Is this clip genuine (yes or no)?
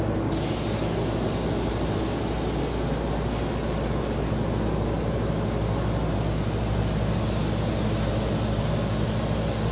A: yes